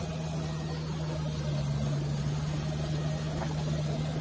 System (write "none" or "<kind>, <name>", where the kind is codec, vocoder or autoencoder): none